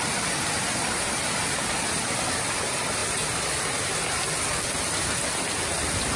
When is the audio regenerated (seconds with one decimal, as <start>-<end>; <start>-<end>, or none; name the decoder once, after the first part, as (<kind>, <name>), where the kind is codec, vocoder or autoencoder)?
none